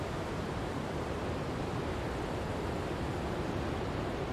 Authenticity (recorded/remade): recorded